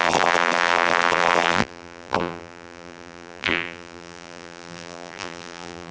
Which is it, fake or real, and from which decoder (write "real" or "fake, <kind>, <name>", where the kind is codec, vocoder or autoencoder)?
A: fake, vocoder, BigVGAN v2